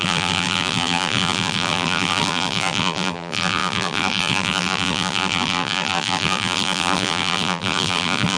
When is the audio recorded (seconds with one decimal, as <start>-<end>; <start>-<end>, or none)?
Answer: none